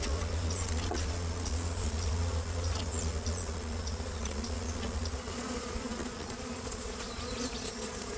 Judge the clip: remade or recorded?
remade